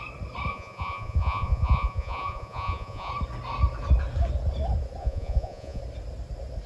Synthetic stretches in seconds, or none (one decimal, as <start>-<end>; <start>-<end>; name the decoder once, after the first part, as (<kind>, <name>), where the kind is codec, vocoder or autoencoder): 0.5-3.1 (vocoder, Vocos); 5.0-5.8